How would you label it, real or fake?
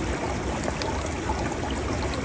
real